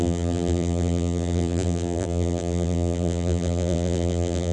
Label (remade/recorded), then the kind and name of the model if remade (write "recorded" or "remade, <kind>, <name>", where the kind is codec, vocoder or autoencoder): remade, vocoder, BigVGAN v2